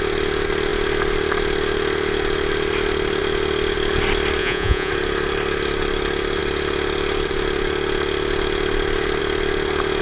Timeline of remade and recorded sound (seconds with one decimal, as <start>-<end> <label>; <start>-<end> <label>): 0.0-4.4 recorded; 4.4-4.9 remade; 4.9-10.0 recorded